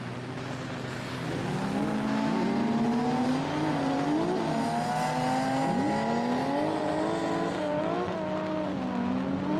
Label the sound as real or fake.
real